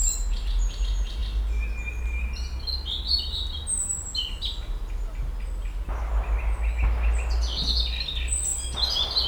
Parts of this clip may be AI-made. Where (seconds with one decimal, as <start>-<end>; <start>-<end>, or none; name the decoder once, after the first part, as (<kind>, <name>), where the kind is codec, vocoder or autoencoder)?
none